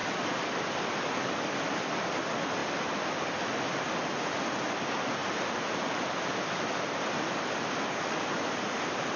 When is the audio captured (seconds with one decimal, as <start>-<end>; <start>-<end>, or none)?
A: 0.0-9.2